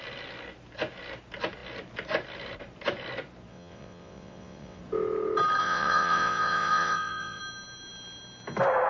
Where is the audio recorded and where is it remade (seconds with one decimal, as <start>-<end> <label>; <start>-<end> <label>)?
0.0-3.5 recorded; 3.5-4.8 remade; 4.8-5.6 recorded; 5.6-7.4 remade; 7.4-8.9 recorded